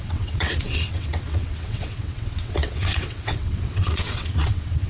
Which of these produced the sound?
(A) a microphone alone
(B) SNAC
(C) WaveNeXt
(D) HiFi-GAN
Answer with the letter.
C